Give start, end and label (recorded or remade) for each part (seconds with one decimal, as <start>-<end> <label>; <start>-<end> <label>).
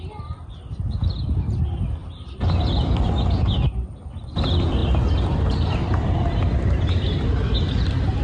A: 0.0-8.2 recorded